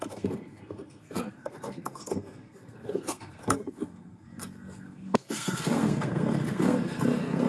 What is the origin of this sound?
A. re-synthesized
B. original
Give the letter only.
A